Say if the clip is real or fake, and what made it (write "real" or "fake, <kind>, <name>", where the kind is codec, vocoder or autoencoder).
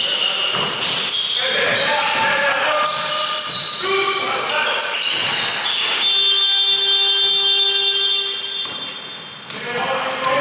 real